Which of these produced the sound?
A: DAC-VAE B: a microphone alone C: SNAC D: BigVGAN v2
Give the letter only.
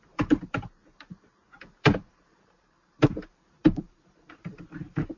D